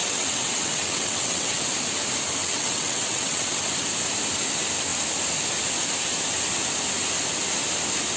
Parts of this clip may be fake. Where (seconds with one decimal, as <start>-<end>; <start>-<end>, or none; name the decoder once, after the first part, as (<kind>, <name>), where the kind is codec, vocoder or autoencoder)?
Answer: 0.0-1.6 (vocoder, WaveNeXt); 2.4-3.6